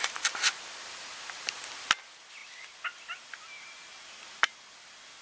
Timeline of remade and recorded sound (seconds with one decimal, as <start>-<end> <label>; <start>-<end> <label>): 0.0-5.2 recorded